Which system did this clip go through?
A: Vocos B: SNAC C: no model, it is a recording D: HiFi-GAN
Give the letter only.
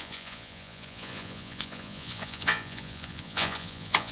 A